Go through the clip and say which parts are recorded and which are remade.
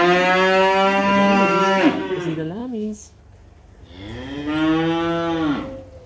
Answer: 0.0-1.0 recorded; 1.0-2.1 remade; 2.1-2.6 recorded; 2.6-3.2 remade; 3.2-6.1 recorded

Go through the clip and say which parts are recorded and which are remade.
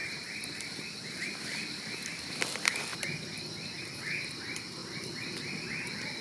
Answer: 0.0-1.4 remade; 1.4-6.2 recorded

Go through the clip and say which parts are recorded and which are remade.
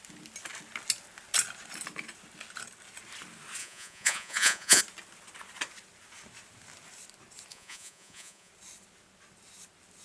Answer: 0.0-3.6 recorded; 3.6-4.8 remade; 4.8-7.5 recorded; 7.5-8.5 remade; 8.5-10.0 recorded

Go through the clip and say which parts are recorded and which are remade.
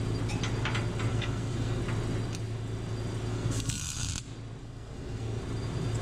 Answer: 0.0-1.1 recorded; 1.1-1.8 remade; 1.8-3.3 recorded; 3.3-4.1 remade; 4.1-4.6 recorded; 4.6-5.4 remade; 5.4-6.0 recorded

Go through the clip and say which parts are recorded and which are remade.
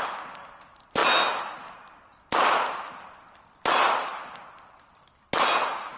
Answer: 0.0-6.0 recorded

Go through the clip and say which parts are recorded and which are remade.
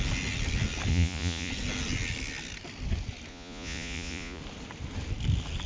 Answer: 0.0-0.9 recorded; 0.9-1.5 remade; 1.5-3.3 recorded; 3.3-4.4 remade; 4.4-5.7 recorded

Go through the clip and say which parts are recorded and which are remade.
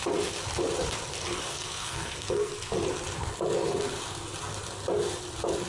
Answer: 0.0-1.5 recorded; 1.5-2.5 remade; 2.5-5.7 recorded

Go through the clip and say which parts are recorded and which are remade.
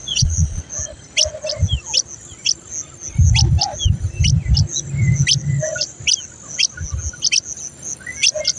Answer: 0.0-0.6 remade; 0.6-8.6 recorded